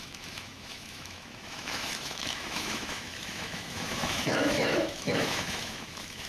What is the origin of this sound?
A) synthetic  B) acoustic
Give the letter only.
A